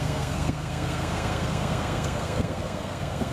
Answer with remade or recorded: remade